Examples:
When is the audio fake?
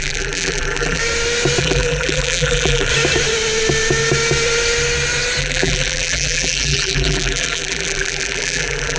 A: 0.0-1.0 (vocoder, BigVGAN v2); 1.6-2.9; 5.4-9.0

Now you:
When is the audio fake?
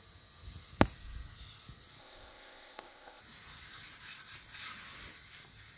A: 2.0-3.2 (codec, ZipCodec)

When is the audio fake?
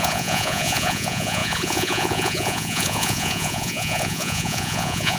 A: 0.0-5.2 (vocoder, Vocos)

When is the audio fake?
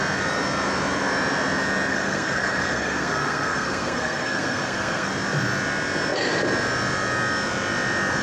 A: 1.9-5.1 (codec, SNAC)